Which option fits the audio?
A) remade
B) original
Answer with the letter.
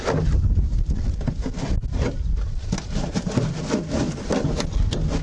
B